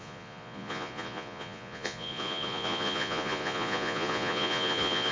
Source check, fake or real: fake